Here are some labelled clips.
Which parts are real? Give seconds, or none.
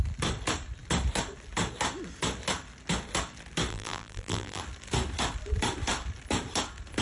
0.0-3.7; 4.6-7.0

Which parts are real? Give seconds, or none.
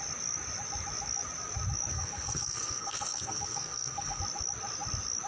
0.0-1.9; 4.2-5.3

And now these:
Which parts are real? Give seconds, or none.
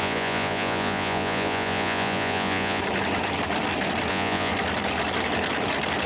2.8-4.1; 4.5-6.1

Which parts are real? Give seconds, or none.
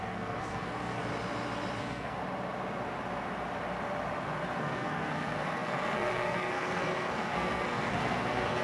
1.0-1.8; 2.2-4.6